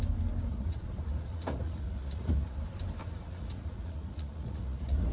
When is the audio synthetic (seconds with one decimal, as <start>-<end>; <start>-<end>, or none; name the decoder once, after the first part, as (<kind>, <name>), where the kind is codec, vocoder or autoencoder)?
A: 0.5-2.6 (vocoder, Vocos); 3.0-5.1